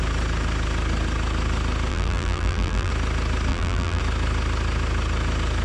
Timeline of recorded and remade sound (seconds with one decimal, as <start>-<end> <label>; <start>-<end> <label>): 0.0-1.9 recorded; 1.9-2.9 remade; 2.9-3.5 recorded; 3.5-4.0 remade; 4.0-5.6 recorded